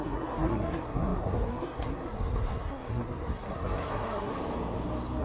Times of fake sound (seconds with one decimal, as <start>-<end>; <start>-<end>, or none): 0.0-4.3